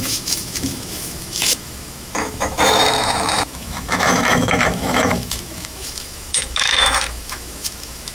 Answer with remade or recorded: remade